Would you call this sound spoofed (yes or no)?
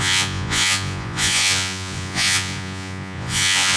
yes